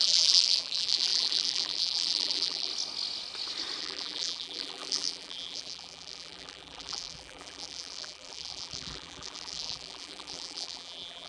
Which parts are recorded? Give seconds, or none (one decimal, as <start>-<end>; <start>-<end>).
2.7-3.8